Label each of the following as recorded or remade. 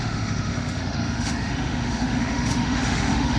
remade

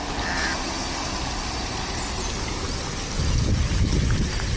recorded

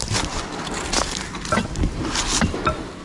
recorded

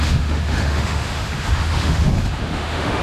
remade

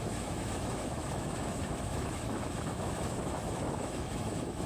remade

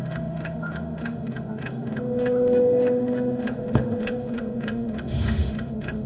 remade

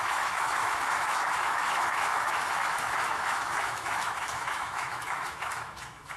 remade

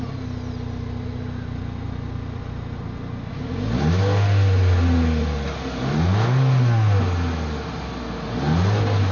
recorded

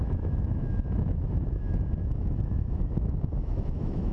remade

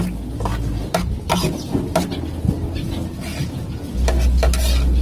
recorded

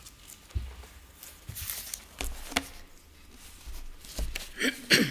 recorded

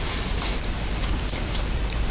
recorded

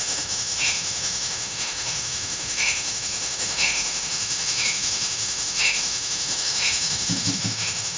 remade